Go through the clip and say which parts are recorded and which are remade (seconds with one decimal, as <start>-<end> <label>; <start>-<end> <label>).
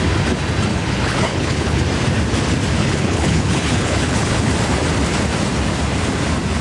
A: 0.0-0.7 recorded; 0.7-1.8 remade; 1.8-2.8 recorded; 2.8-4.5 remade; 4.5-6.6 recorded